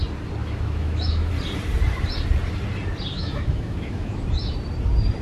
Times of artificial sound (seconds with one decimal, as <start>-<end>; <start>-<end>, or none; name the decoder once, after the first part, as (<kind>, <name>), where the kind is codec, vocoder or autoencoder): 0.4-1.3 (autoencoder, DAC-VAE); 3.1-4.2